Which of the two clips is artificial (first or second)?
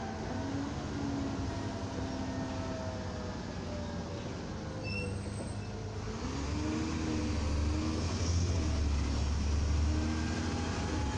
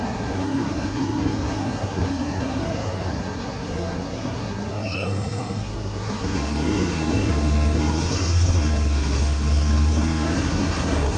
second